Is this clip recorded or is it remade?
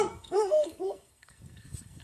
remade